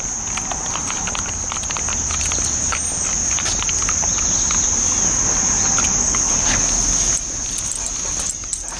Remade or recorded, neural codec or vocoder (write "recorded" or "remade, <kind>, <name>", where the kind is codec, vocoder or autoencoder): recorded